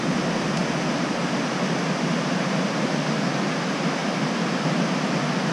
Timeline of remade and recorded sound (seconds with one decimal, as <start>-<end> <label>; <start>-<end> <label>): 0.0-5.5 recorded